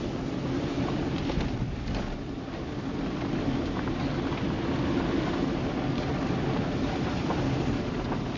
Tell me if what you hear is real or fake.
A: real